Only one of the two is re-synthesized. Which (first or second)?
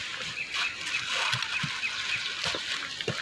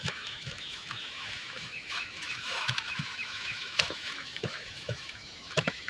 second